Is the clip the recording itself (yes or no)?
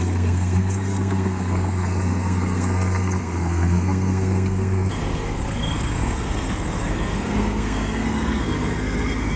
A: no